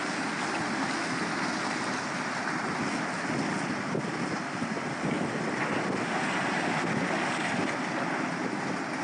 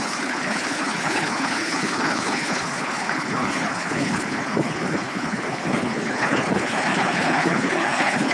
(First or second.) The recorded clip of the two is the first